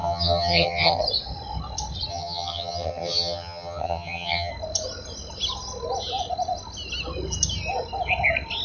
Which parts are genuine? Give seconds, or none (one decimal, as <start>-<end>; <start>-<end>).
1.0-2.1; 4.5-8.6